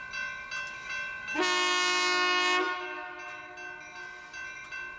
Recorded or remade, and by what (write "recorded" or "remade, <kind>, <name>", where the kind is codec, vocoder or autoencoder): recorded